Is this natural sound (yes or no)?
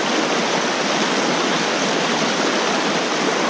yes